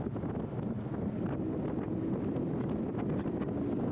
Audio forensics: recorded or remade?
recorded